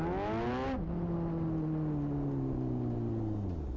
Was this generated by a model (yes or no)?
no